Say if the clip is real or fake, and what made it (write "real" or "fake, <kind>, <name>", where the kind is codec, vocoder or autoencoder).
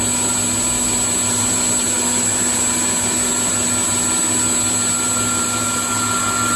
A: real